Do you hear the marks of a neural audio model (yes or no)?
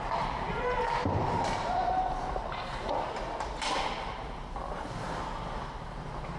no